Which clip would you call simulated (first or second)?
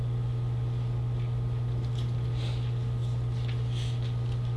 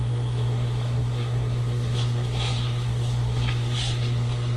second